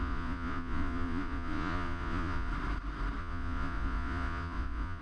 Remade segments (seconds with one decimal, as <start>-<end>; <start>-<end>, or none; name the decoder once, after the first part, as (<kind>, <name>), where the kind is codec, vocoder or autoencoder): 0.0-2.5 (vocoder, Vocos); 3.2-5.0

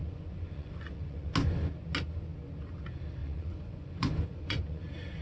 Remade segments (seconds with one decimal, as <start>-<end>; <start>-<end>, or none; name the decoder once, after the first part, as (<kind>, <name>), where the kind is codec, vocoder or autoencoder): 0.0-1.3 (vocoder, Vocos); 3.2-4.8